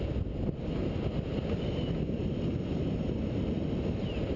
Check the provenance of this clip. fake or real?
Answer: real